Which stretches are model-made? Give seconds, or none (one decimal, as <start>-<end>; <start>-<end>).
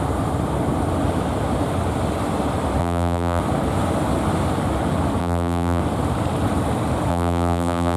2.8-3.4; 5.2-5.8; 7.1-8.0